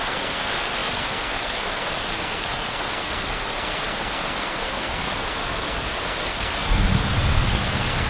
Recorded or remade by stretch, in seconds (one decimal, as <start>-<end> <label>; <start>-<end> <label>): 0.0-8.1 remade